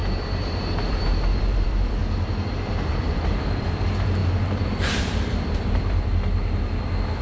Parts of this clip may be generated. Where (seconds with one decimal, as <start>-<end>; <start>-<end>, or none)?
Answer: 0.0-2.0; 2.9-7.2